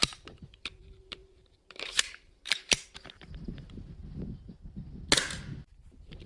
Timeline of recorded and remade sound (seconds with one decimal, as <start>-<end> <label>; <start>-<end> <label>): 0.0-4.0 remade; 4.0-5.8 recorded; 5.8-6.3 remade